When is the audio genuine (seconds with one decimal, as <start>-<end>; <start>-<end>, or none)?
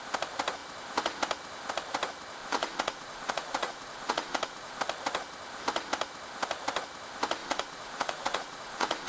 0.0-2.4; 4.8-7.4